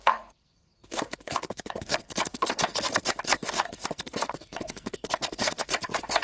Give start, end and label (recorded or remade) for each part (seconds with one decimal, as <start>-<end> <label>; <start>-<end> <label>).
0.0-6.2 remade